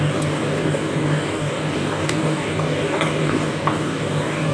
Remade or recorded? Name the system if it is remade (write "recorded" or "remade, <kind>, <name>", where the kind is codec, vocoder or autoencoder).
remade, codec, DAC